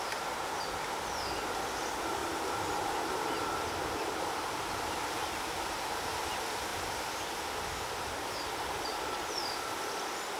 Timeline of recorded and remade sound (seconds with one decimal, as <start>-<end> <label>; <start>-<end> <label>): 0.0-2.2 recorded; 2.2-5.3 remade; 5.3-6.7 recorded; 6.7-8.4 remade; 8.4-10.4 recorded